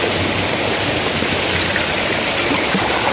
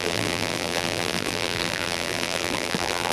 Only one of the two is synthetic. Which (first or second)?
second